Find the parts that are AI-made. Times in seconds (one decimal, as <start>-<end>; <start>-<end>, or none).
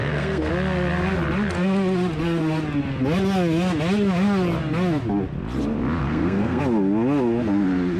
0.0-0.5; 6.0-6.6